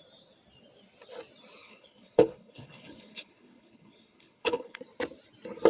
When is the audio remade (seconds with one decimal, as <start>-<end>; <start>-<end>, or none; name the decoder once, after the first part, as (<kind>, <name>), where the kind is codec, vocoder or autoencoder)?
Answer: 1.6-4.8 (codec, HILCodec)